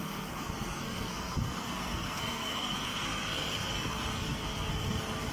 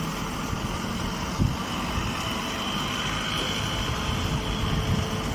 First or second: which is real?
second